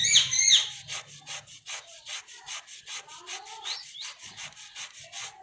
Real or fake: real